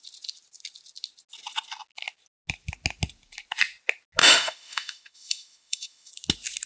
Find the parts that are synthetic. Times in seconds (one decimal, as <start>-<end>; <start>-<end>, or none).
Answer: 4.2-6.1

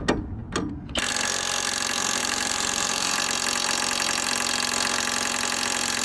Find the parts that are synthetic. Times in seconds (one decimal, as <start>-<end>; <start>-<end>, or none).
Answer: 2.2-3.2

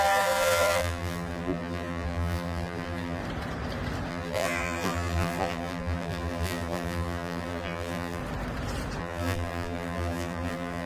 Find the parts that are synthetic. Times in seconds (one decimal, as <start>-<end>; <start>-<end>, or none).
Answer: 0.0-3.2; 4.1-8.2; 9.0-10.9

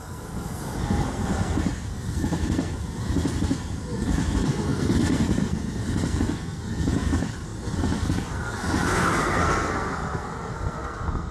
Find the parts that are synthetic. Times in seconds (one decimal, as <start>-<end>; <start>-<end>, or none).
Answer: 0.0-11.3

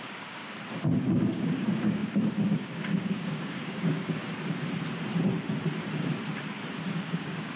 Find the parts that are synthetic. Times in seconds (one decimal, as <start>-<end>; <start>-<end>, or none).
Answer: 0.0-0.4; 1.0-4.2; 6.9-7.6

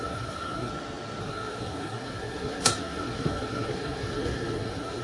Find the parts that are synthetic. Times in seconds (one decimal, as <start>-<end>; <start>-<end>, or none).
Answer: 0.0-0.7; 1.2-5.0